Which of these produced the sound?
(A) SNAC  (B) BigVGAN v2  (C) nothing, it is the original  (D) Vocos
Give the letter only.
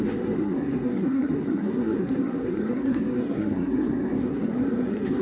A